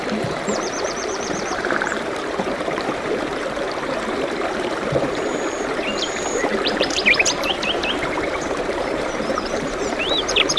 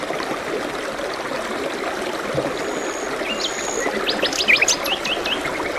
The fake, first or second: first